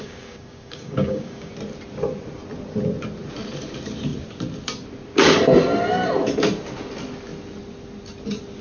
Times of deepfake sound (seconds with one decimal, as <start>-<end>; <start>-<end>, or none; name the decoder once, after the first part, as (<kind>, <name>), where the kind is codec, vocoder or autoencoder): 0.0-1.5 (codec, DAC)